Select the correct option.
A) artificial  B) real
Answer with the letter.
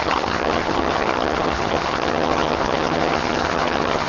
A